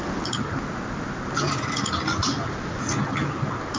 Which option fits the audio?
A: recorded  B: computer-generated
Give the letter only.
A